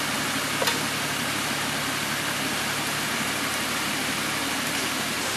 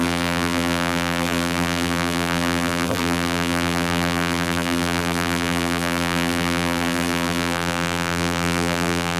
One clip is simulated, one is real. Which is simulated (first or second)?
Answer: second